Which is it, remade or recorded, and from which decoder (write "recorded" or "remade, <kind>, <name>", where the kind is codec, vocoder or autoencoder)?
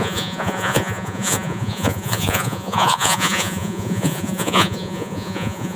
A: remade, vocoder, Vocos